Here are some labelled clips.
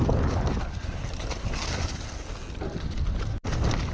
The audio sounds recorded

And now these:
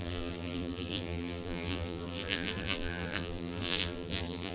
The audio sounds remade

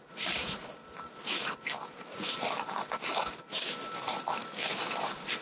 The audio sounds remade